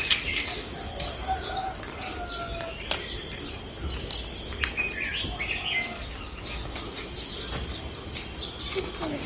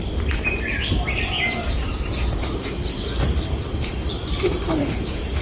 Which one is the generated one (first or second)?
second